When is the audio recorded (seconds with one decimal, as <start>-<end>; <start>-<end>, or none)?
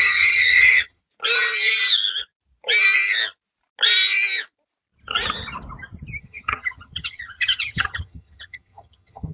1.0-6.2